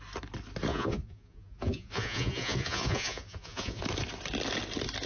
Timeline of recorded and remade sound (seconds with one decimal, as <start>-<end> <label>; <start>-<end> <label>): 0.0-0.7 recorded; 0.7-3.8 remade; 3.8-5.1 recorded